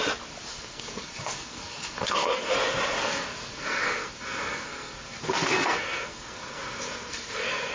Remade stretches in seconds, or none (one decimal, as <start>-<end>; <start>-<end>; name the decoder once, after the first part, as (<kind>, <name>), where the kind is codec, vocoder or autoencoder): 0.5-2.5 (codec, SNAC); 3.0-7.7